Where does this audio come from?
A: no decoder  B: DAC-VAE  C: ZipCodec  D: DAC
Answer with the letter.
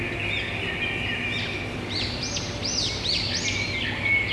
A